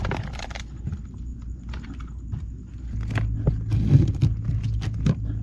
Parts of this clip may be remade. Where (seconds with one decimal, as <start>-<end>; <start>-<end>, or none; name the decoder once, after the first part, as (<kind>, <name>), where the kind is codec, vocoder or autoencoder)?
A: none